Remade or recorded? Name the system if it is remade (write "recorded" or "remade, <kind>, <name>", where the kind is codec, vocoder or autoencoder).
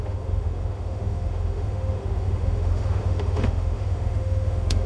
remade, autoencoder, DAC-VAE